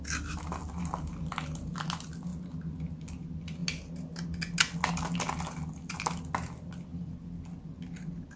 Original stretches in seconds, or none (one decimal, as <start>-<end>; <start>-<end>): 0.0-8.4